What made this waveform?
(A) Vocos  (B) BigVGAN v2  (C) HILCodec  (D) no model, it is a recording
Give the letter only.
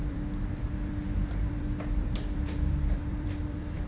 B